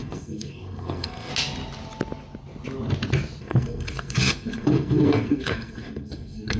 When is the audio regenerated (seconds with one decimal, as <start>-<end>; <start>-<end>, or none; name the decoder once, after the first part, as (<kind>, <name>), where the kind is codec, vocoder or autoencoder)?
0.0-1.3 (codec, SNAC); 3.4-6.6